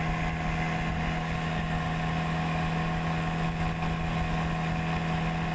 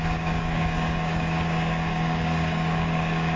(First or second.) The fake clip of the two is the second